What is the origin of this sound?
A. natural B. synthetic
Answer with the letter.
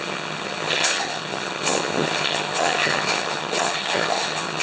B